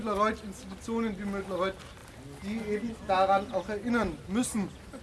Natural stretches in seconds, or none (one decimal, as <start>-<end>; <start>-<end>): 0.0-5.0